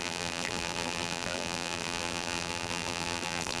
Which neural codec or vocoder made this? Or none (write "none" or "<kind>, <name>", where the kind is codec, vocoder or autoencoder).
vocoder, BigVGAN v2